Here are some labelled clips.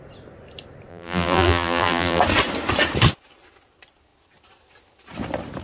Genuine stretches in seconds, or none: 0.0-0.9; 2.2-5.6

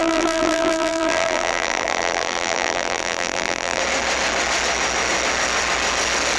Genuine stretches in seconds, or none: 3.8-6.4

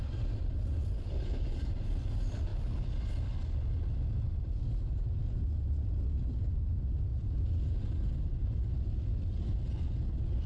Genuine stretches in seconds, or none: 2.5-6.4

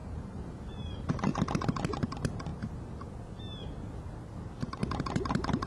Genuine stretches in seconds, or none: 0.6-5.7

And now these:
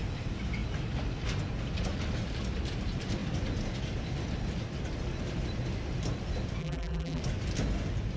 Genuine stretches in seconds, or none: 0.0-6.6; 7.2-8.2